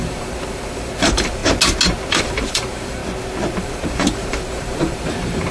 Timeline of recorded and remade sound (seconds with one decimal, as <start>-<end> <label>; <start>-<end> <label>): 0.0-1.4 remade; 1.4-2.1 recorded; 2.1-3.0 remade; 3.0-3.6 recorded; 3.6-5.5 remade